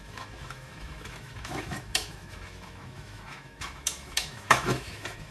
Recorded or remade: remade